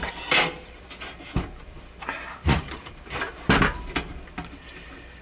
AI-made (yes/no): yes